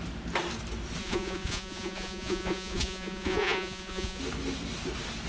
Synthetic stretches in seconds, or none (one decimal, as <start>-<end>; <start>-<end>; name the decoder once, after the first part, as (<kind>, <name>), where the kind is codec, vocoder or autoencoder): 1.0-4.2 (vocoder, Vocos)